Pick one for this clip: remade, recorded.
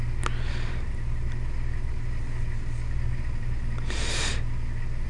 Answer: recorded